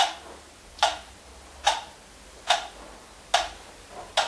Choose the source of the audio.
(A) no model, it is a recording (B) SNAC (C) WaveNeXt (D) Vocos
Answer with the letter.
A